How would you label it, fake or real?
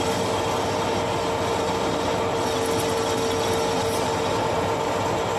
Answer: real